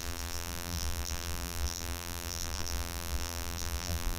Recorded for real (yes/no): no